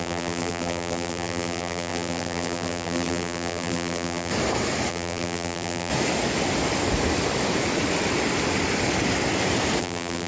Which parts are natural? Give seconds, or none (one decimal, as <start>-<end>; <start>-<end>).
4.3-4.9; 5.9-9.8